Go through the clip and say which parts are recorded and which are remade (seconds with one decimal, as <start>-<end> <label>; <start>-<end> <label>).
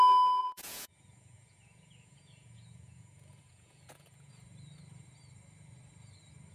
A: 0.0-0.4 recorded; 0.4-4.3 remade; 4.3-6.5 recorded